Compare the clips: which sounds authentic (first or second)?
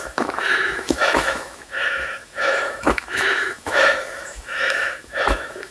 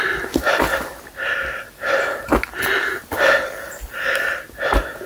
second